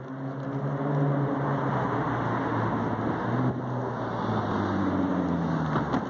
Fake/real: real